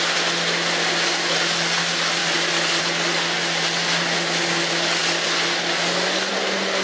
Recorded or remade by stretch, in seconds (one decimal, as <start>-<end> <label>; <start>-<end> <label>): 0.0-6.8 recorded